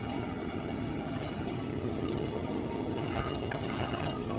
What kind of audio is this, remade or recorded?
remade